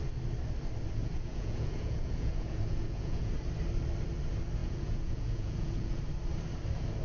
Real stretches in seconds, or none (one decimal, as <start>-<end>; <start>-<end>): 0.0-1.0; 3.3-4.6; 6.0-7.0